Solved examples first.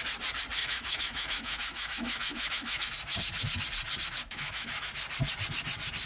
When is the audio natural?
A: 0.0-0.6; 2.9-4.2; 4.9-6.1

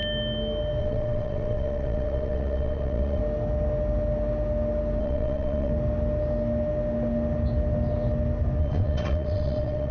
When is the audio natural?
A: 0.0-0.8; 3.2-5.0; 5.7-8.6

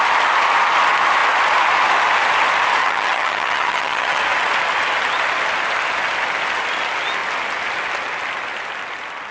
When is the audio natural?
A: 0.0-2.8; 4.2-9.3

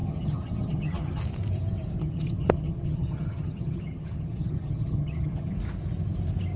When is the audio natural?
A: 1.2-2.0; 5.5-6.6